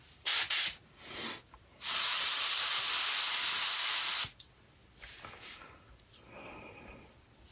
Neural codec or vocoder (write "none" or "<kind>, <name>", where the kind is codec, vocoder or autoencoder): none